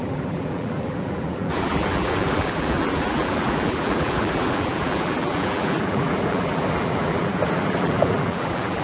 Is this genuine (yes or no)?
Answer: no